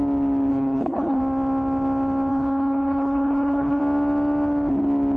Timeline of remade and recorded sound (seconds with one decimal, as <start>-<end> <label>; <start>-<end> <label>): 0.0-0.5 recorded; 0.5-1.2 remade; 1.2-2.3 recorded; 2.3-3.8 remade; 3.8-5.2 recorded